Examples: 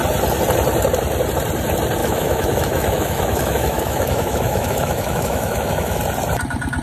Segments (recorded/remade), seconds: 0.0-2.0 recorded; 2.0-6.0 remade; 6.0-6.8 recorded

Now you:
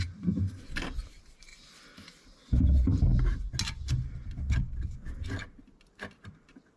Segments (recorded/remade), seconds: 0.0-6.8 recorded

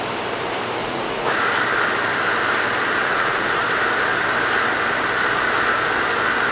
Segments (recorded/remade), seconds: 0.0-0.8 recorded; 0.8-1.3 remade; 1.3-3.0 recorded; 3.0-3.5 remade; 3.5-6.5 recorded

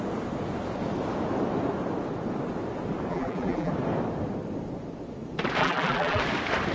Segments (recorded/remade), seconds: 0.0-3.1 recorded; 3.1-3.7 remade; 3.7-5.6 recorded; 5.6-6.2 remade; 6.2-6.7 recorded

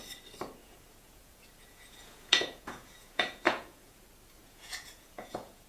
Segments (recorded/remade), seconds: 0.0-0.6 recorded; 0.6-4.0 remade; 4.0-4.4 recorded; 4.4-5.7 remade

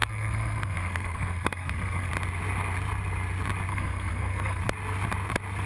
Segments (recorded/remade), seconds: 0.0-2.1 remade; 2.1-3.7 recorded; 3.7-4.6 remade; 4.6-5.7 recorded

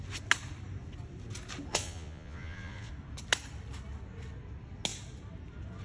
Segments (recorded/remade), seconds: 0.0-1.7 recorded; 1.7-2.9 remade; 2.9-5.8 recorded

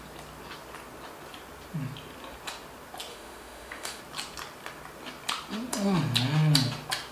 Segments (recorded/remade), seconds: 0.0-3.1 recorded; 3.1-4.0 remade; 4.0-7.1 recorded